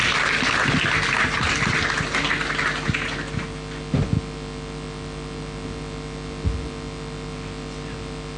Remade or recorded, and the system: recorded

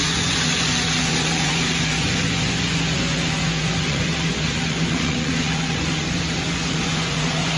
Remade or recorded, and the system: remade, vocoder, Vocos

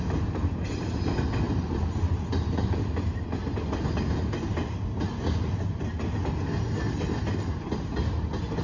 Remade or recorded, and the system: recorded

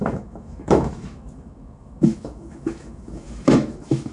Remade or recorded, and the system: remade, autoencoder, DAC-VAE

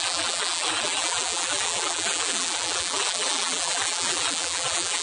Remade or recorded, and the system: remade, vocoder, BigVGAN v2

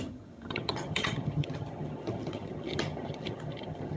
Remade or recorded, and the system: remade, vocoder, HiFi-GAN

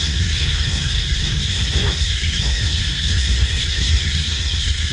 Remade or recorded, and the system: remade, codec, SNAC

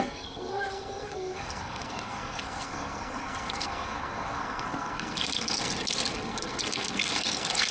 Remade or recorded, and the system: remade, codec, SNAC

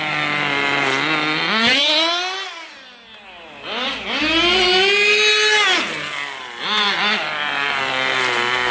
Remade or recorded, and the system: recorded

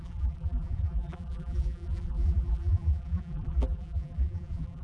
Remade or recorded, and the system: remade, vocoder, BigVGAN v2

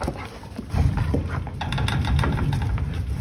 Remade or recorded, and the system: remade, vocoder, BigVGAN v2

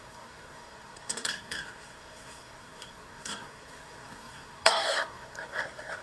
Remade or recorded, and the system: remade, codec, SNAC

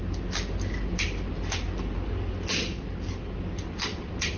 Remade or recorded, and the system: recorded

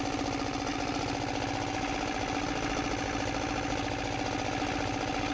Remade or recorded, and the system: recorded